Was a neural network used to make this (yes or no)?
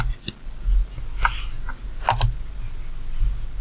no